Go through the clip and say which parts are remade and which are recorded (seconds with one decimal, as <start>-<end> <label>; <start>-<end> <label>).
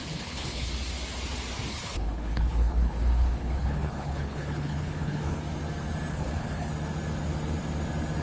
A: 0.0-0.7 remade; 0.7-1.7 recorded; 1.7-5.4 remade; 5.4-6.1 recorded; 6.1-6.7 remade; 6.7-8.2 recorded